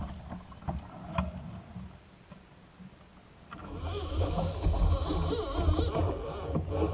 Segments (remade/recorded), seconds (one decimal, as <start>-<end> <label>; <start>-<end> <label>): 0.0-3.6 recorded; 3.6-4.6 remade; 4.6-6.9 recorded